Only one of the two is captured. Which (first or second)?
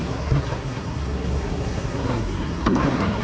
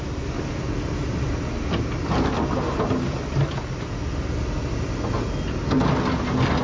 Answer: second